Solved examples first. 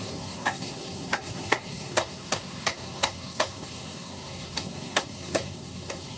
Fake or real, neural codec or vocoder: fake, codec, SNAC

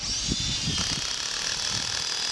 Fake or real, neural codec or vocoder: real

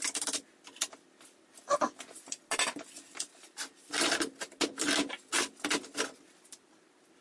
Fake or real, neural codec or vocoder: real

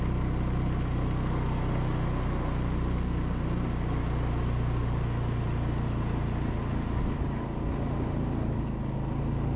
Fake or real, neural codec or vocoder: real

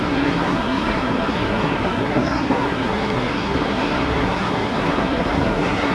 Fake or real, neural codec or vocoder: fake, codec, SNAC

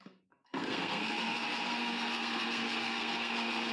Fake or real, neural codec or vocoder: fake, codec, SNAC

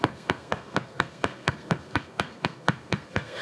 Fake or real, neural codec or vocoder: fake, codec, SNAC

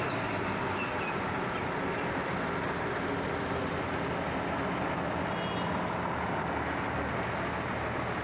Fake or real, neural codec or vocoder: real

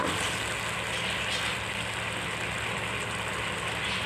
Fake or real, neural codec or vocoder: real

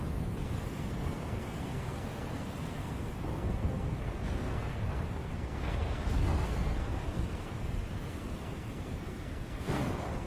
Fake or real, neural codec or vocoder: fake, codec, SNAC